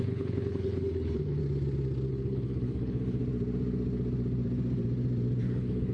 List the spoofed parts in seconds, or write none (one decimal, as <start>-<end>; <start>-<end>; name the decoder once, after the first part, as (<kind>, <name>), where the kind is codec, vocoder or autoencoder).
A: 0.0-1.4 (codec, HILCodec); 2.1-3.2; 5.4-5.9